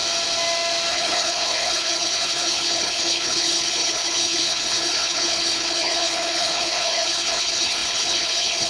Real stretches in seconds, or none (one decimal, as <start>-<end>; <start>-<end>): 0.0-0.9